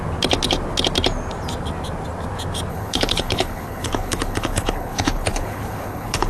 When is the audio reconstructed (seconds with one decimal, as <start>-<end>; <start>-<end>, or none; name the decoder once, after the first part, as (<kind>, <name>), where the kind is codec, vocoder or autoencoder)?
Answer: 2.7-6.3 (codec, HILCodec)